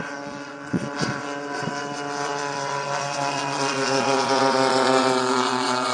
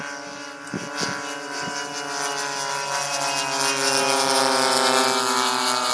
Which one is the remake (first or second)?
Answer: first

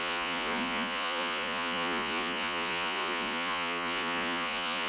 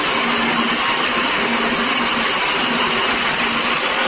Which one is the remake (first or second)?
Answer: first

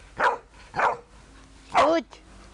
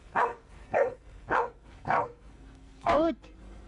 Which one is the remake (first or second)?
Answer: second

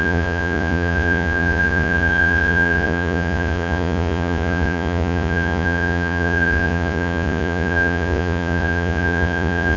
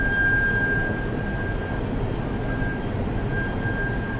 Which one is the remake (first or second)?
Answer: first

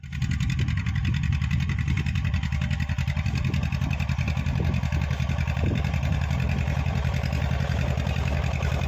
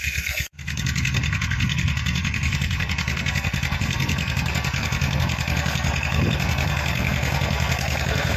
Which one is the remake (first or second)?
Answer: second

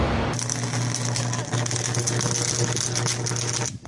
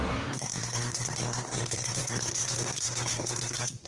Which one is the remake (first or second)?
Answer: second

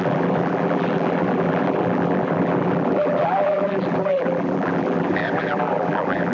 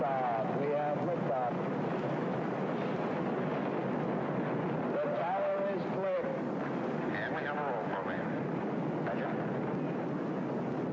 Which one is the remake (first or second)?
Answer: first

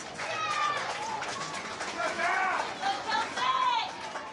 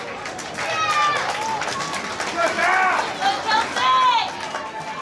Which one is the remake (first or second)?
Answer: first